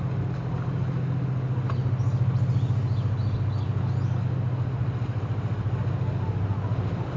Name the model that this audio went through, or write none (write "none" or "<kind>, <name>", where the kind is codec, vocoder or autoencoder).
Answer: none